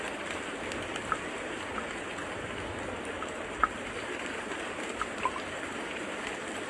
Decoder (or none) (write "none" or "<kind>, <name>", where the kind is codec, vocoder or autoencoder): none